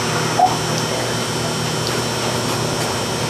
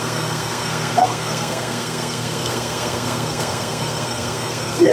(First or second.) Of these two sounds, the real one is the first